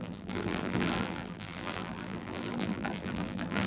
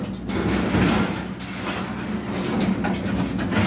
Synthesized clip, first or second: first